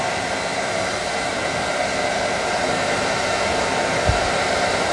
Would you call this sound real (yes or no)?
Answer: yes